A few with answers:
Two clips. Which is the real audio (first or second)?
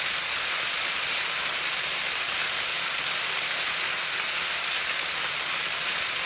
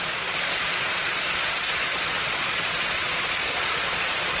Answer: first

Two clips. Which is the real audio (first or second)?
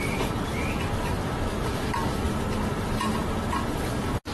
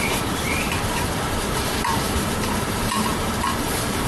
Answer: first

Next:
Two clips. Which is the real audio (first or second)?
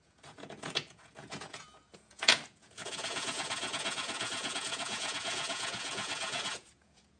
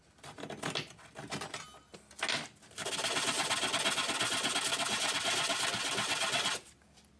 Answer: second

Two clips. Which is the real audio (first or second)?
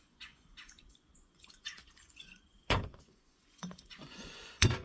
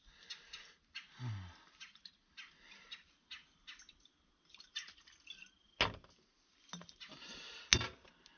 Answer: second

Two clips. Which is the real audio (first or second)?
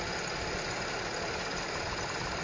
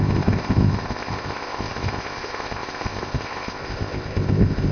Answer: first